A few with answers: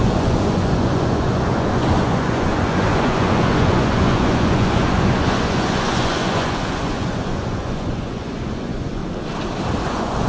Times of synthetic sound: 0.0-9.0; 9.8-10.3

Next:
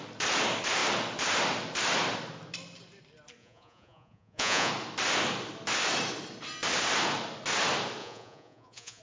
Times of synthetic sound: 3.4-4.7; 8.0-9.0

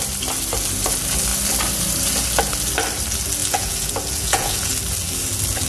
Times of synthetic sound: 3.4-4.7

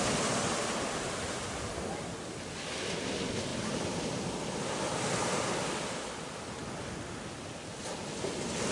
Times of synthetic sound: none

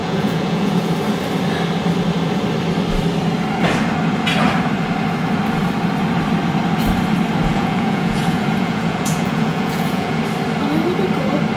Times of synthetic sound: 0.0-0.9; 7.5-10.2

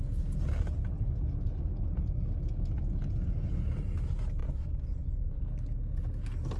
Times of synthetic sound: 4.4-5.4

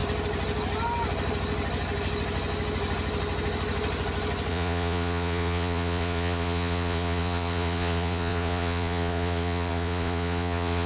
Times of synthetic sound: 4.5-10.9